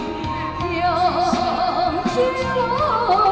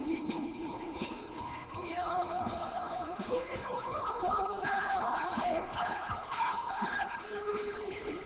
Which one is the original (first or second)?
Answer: first